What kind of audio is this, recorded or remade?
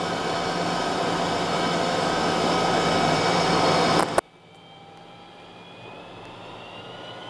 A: recorded